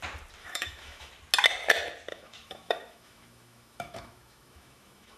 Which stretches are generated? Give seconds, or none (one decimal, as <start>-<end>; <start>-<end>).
0.4-1.1; 2.1-5.2